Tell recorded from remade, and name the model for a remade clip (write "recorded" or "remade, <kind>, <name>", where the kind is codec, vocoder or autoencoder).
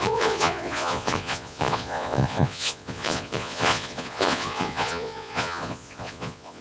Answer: remade, vocoder, Vocos